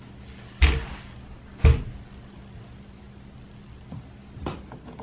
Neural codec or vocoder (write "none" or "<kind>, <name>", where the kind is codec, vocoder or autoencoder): none